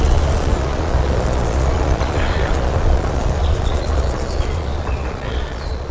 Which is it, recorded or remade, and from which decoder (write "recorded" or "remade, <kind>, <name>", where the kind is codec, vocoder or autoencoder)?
remade, vocoder, Vocos